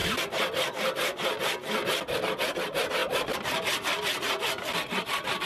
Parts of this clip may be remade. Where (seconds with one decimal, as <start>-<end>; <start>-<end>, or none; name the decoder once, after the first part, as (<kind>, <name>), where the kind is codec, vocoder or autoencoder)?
none